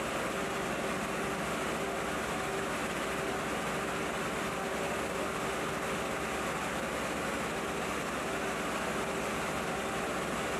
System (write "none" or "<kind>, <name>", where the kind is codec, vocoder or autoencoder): none